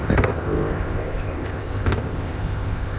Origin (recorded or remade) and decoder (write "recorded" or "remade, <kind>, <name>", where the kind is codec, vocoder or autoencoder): remade, codec, ZipCodec